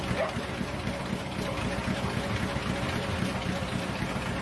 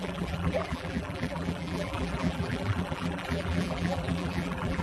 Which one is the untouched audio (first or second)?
first